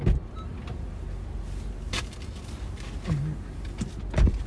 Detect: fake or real real